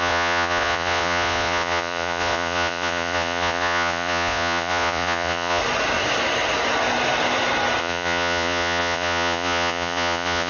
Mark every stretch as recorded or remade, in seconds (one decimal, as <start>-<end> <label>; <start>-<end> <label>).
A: 0.0-5.6 remade; 5.6-7.8 recorded; 7.8-10.5 remade